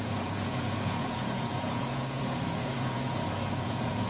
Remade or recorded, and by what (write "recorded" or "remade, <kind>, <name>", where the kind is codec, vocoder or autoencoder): remade, vocoder, Vocos